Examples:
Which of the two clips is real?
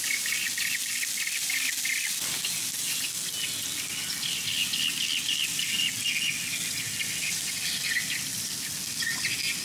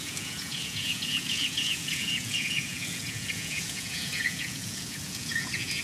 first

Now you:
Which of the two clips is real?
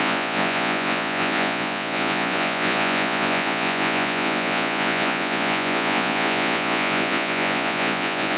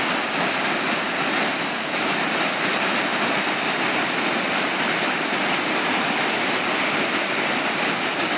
second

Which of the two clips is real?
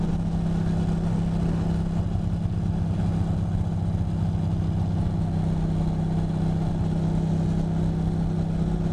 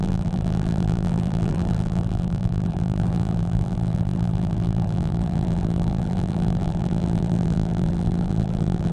first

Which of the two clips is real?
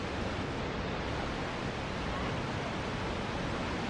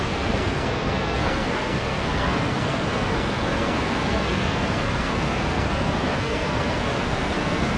first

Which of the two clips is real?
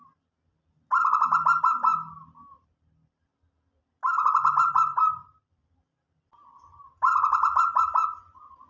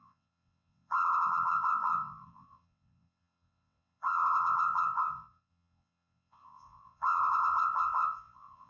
first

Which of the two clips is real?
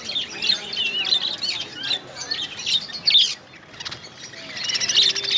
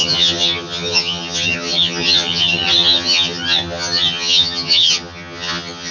first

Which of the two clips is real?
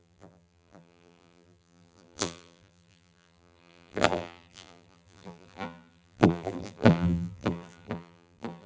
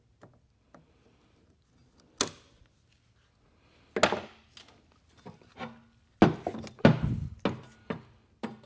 second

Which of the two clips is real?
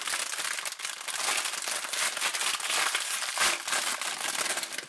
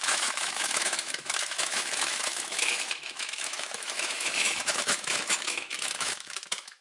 first